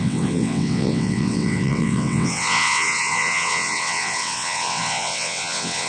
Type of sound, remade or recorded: remade